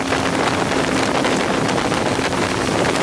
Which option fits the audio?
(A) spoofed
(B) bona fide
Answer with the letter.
B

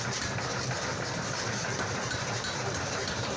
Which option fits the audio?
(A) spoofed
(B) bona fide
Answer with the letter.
A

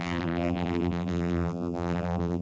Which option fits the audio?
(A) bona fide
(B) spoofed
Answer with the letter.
B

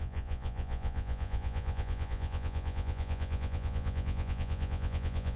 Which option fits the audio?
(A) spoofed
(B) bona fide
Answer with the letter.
A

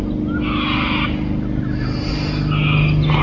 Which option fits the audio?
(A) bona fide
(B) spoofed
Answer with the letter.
A